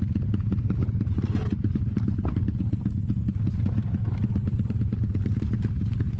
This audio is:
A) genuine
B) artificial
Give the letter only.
A